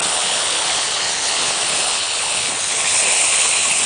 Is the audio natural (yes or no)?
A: no